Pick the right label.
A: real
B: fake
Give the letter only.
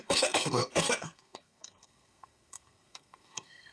B